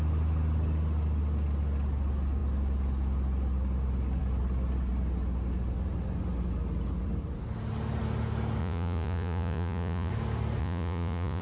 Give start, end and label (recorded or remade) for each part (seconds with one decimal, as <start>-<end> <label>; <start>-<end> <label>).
0.0-8.6 recorded; 8.6-10.1 remade; 10.1-10.6 recorded; 10.6-11.4 remade